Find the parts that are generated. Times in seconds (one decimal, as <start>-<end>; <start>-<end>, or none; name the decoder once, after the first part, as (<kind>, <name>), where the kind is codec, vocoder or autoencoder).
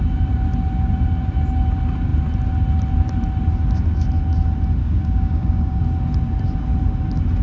4.8-5.8 (codec, DAC)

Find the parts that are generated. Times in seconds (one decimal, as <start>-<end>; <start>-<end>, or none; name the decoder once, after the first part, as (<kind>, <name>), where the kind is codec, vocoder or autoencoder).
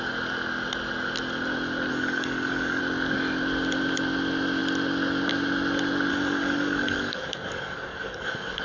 1.9-2.8 (codec, DAC); 6.1-8.6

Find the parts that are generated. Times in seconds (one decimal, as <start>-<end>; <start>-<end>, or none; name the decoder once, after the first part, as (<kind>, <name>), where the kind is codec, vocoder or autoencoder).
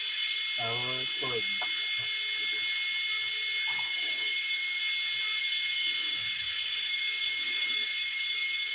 0.0-0.4 (codec, DAC); 3.7-4.8; 5.4-8.7